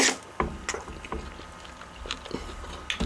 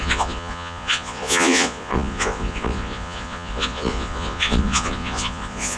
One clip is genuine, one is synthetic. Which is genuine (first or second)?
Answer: first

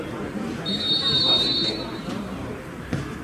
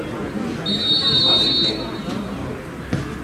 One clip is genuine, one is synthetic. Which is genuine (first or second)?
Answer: second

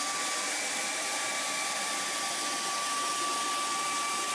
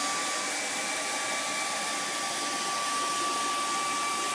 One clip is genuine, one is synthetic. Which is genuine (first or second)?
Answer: second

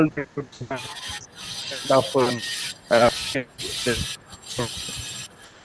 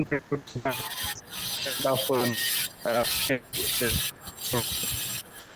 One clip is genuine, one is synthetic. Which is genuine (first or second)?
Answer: second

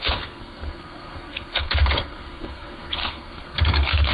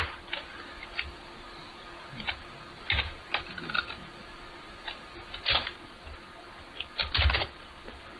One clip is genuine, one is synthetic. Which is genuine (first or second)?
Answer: second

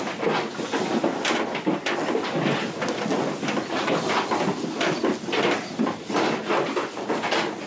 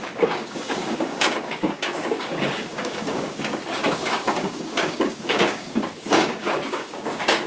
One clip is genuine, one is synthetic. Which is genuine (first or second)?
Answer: first